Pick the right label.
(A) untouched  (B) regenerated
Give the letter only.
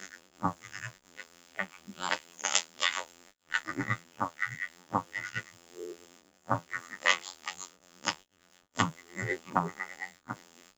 B